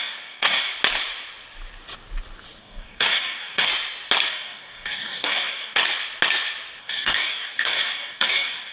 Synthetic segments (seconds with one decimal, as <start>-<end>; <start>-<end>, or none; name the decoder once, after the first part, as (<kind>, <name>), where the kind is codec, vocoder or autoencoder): 0.0-0.7 (codec, DAC); 2.6-3.7; 4.3-5.8; 6.8-8.7